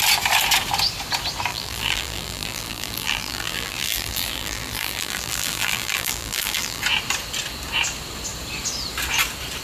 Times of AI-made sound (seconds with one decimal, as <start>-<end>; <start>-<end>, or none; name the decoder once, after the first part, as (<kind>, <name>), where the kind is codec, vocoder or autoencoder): 1.5-6.8 (vocoder, BigVGAN v2)